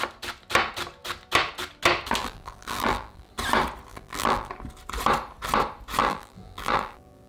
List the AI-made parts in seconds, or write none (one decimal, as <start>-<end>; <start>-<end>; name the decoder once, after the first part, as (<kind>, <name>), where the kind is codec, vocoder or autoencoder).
2.2-3.3 (vocoder, BigVGAN v2); 3.9-4.5; 6.0-7.3